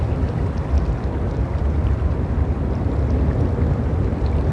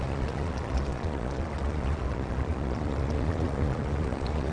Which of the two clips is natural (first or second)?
first